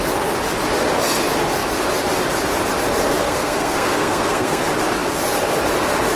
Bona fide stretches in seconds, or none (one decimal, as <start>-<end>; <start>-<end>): 0.0-3.2; 4.6-6.2